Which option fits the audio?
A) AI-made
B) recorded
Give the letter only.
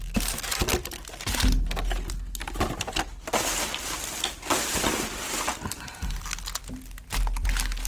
B